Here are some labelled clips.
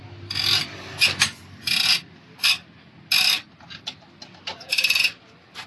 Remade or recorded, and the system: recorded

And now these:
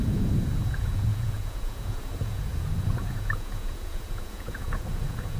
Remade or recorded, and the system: remade, vocoder, Vocos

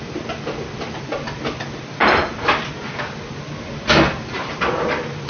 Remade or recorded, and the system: recorded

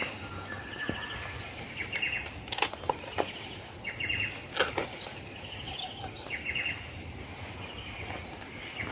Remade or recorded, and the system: recorded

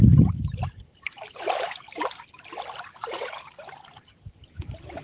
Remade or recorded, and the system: recorded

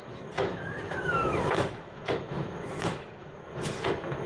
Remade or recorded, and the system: remade, autoencoder, DAC-VAE